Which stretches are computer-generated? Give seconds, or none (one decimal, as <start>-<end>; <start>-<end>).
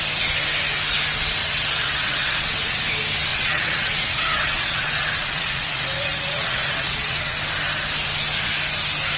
1.4-2.8; 3.3-7.4